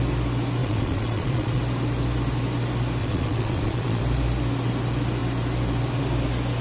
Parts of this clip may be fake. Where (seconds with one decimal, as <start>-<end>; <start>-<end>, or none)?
0.6-1.6; 3.0-4.0